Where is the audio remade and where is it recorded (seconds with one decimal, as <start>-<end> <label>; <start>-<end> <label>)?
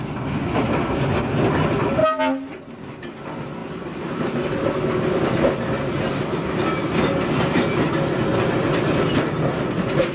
0.0-10.1 recorded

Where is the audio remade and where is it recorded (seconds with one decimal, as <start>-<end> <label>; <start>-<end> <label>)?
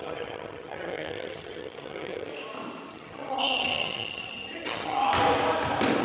0.0-2.3 remade; 2.3-2.9 recorded; 2.9-5.1 remade; 5.1-6.0 recorded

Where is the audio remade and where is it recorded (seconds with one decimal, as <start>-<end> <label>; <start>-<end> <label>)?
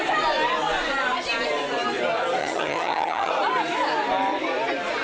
0.0-2.4 recorded; 2.4-3.3 remade; 3.3-5.0 recorded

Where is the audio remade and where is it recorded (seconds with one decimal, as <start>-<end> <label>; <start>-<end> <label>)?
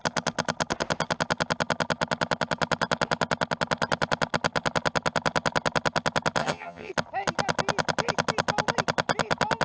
0.0-6.4 recorded; 6.4-6.9 remade; 6.9-9.6 recorded